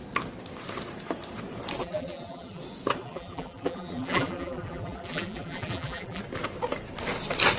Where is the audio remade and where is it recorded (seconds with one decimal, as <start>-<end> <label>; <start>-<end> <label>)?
0.0-1.8 recorded; 1.8-2.6 remade; 2.6-3.0 recorded; 3.0-6.2 remade; 6.2-7.6 recorded